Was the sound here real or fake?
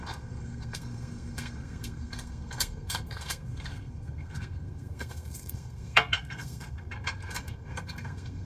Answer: fake